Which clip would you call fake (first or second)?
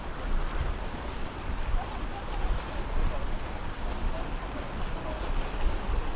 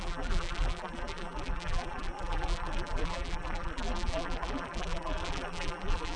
second